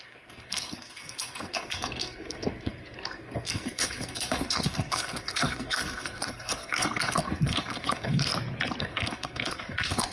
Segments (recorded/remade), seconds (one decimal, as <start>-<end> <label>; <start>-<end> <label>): 0.0-8.3 remade; 8.3-8.8 recorded; 8.8-10.1 remade